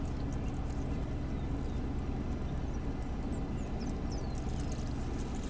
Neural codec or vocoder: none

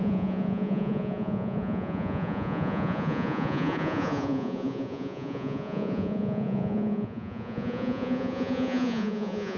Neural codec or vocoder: vocoder, Vocos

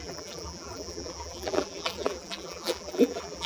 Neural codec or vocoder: vocoder, BigVGAN v2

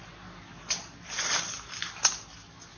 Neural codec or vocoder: none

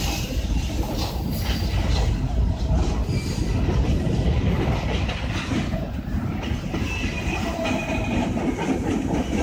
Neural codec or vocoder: none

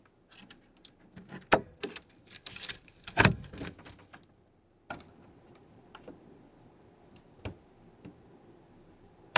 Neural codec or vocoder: vocoder, BigVGAN v2